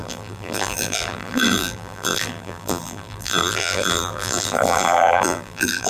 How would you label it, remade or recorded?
remade